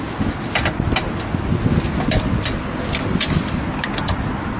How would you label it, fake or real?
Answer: real